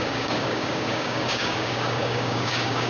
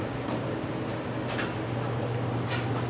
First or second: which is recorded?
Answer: second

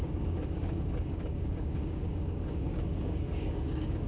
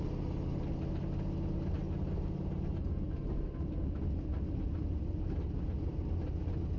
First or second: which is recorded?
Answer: second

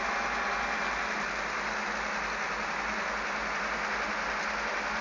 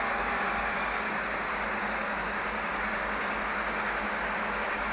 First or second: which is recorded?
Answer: first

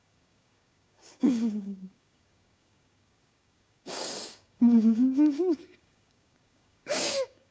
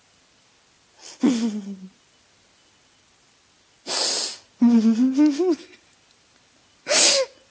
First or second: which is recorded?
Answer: second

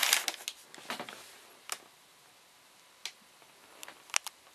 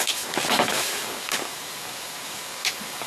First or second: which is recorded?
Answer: first